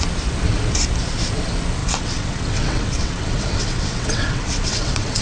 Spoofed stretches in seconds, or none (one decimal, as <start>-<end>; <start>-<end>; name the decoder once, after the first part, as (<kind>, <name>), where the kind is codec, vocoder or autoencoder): 1.8-5.2 (vocoder, WaveNeXt)